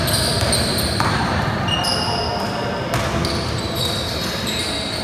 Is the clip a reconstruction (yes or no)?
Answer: no